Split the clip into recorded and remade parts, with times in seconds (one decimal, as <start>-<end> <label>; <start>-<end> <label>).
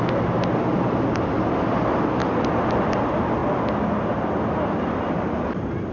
0.0-5.9 recorded